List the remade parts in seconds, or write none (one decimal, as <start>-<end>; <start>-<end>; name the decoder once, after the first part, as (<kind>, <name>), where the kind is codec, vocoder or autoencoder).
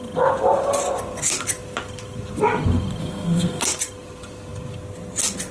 3.0-3.6 (codec, SNAC)